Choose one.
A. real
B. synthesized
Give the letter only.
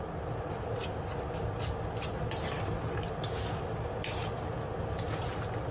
A